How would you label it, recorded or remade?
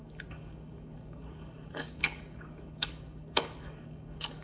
remade